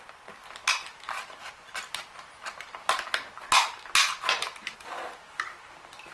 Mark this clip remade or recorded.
recorded